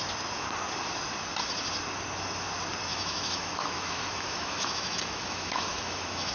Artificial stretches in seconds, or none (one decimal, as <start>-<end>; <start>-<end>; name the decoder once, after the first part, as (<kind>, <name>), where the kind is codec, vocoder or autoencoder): 2.9-6.3 (autoencoder, DAC-VAE)